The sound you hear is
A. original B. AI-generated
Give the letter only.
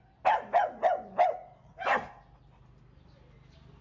A